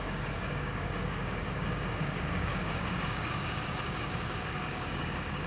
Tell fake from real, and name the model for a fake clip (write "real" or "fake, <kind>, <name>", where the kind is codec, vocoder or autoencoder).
fake, codec, DAC